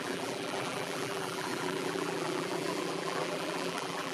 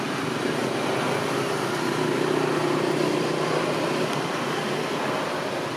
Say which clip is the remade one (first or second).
first